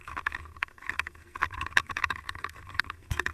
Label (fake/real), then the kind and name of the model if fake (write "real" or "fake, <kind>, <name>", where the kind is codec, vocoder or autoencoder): fake, codec, SNAC